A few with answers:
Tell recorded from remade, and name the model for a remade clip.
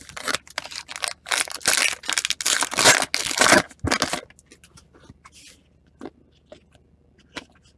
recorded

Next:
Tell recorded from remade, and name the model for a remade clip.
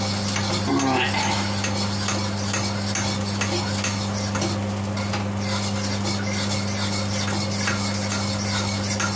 recorded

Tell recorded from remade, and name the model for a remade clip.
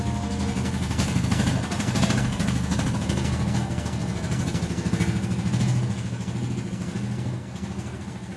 remade, codec, SNAC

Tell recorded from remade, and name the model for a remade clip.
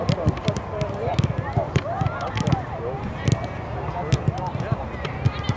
recorded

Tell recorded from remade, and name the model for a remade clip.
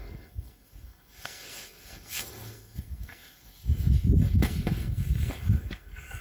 remade, codec, SNAC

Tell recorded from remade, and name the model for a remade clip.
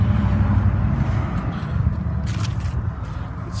recorded